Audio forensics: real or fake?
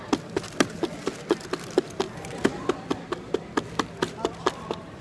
real